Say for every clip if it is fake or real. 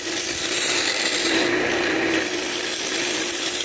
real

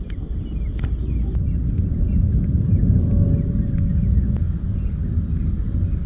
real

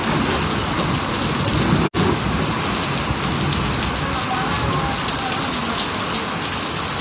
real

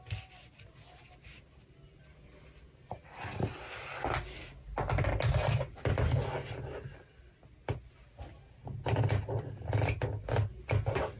real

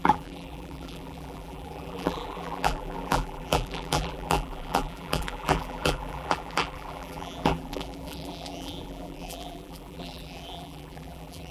fake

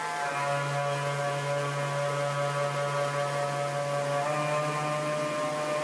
real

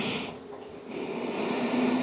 real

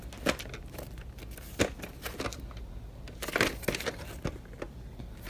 real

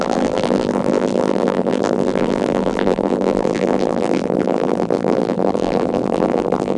fake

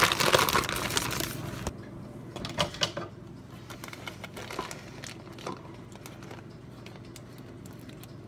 real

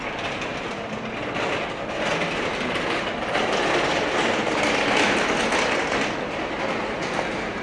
real